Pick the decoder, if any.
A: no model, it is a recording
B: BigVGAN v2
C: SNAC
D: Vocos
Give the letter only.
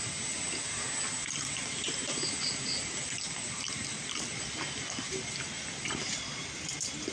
A